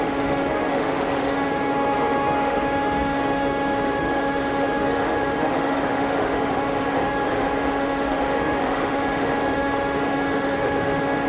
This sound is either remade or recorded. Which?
remade